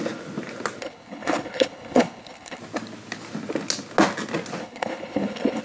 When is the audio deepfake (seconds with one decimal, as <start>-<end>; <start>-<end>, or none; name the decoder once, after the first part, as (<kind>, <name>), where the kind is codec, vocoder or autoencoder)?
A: 0.8-2.6 (codec, HILCodec); 4.6-5.6